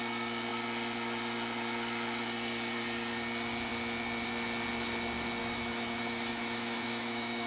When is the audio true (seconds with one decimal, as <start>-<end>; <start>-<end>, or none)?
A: 0.0-5.4